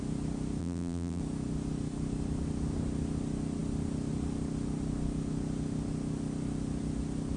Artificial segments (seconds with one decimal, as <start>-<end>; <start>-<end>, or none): 0.6-1.2